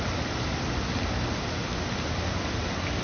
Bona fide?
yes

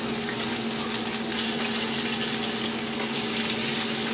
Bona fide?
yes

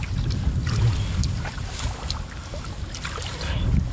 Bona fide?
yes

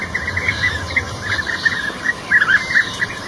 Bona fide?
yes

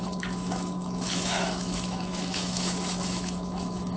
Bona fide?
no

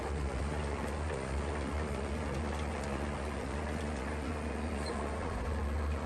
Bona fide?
no